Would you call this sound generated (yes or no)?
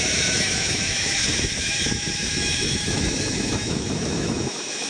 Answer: yes